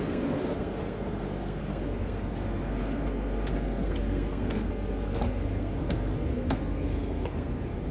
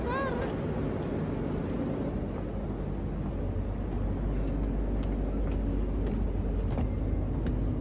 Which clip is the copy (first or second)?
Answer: first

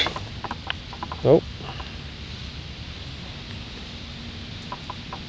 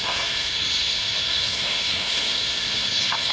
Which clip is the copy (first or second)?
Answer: second